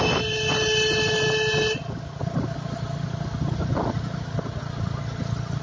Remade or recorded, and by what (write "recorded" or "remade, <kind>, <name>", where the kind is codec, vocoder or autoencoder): recorded